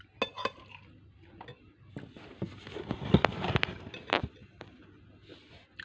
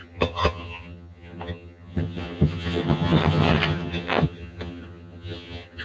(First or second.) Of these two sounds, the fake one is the second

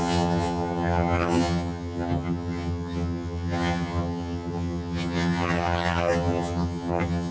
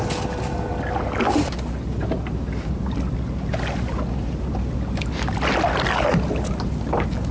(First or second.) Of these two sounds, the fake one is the first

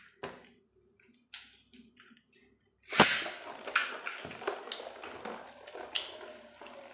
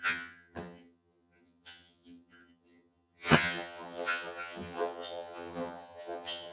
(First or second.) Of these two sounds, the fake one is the second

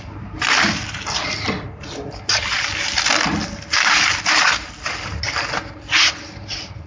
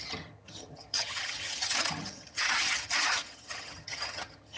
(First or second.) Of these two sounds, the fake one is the second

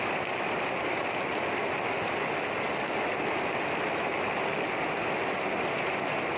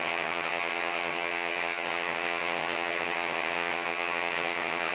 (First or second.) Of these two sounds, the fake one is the second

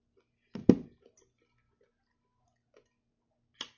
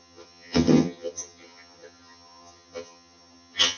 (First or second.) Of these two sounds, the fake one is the second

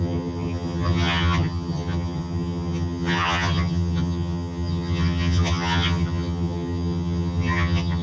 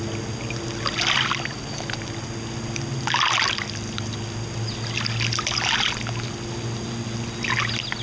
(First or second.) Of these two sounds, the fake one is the first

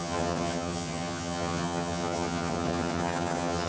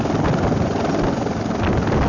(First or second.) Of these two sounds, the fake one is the first